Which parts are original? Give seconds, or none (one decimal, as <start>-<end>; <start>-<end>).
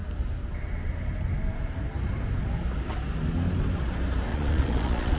0.0-4.3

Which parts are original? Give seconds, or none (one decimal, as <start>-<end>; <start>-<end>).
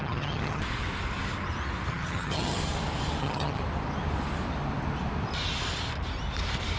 0.6-1.9; 2.6-3.2; 3.6-6.8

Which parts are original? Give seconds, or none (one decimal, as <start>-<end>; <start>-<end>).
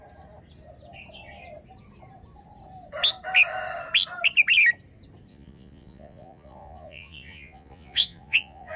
0.0-5.3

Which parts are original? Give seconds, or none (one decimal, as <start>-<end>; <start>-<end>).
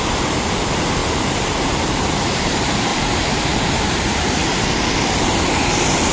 4.4-5.0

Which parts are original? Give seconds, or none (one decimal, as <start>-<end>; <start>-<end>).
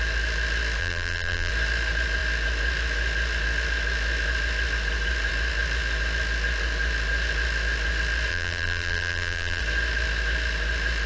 0.0-0.8; 1.5-8.3; 9.6-11.1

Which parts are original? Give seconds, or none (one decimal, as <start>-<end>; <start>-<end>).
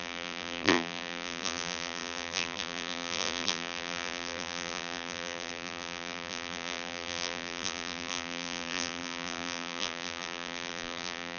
none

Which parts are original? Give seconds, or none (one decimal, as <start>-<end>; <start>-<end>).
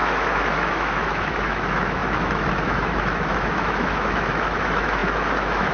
none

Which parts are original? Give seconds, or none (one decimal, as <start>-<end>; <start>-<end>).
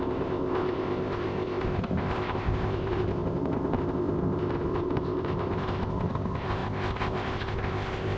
none